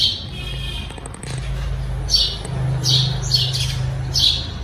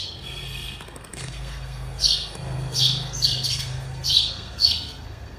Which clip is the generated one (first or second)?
second